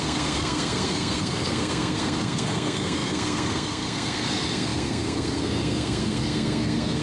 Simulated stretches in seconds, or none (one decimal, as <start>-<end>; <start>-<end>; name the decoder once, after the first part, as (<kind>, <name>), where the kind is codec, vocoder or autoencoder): 0.0-7.0 (codec, SNAC)